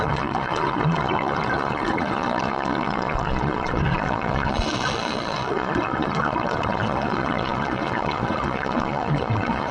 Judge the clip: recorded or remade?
remade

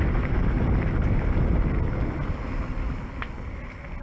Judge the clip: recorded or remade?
recorded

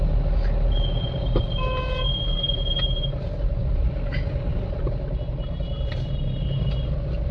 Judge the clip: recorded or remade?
recorded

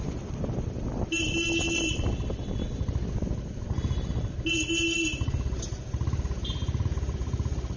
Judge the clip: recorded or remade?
recorded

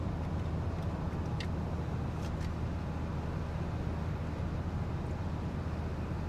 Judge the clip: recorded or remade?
recorded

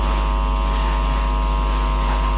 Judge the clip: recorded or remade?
recorded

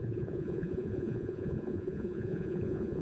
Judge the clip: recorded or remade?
remade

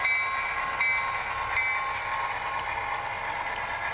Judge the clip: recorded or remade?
recorded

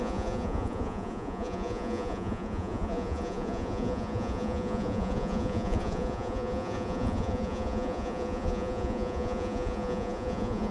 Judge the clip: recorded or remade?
remade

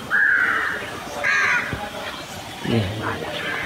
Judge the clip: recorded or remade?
recorded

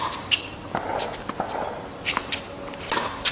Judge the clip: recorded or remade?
recorded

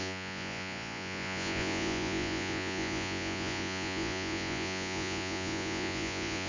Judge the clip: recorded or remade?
remade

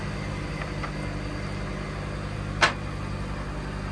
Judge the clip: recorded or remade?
recorded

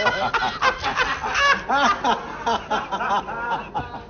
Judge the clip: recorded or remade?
recorded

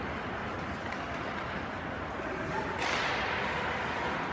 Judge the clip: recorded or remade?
recorded